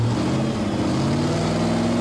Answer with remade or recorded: recorded